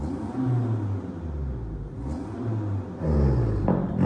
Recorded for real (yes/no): yes